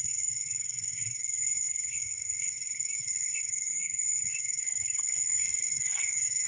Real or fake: fake